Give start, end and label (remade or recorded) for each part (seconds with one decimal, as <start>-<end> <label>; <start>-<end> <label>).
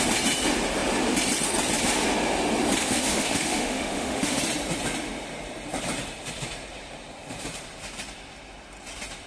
0.0-2.8 recorded; 2.8-4.4 remade; 4.4-9.3 recorded